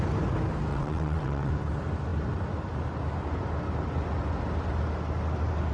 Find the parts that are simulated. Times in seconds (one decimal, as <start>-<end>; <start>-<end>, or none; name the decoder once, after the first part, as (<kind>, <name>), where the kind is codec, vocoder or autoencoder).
0.7-1.5 (vocoder, WaveNeXt)